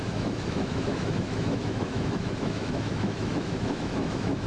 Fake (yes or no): yes